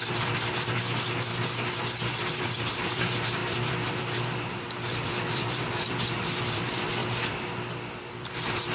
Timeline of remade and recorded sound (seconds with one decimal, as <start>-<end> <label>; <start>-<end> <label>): 0.0-1.3 remade; 1.3-2.3 recorded; 2.3-7.0 remade; 7.0-8.1 recorded; 8.1-8.7 remade